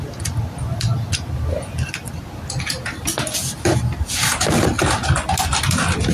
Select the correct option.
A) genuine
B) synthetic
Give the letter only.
A